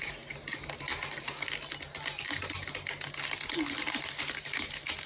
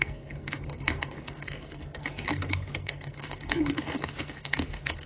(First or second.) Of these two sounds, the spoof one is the second